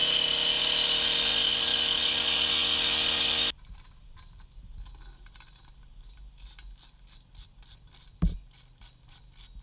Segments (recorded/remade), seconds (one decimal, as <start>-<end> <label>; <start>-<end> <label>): 0.0-9.6 recorded